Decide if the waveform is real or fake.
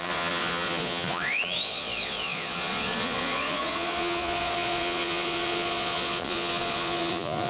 fake